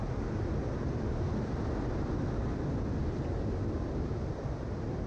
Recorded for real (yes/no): yes